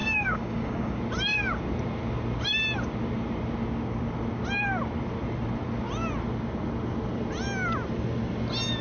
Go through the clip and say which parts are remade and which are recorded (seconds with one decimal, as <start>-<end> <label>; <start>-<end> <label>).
0.0-1.0 remade; 1.0-8.8 recorded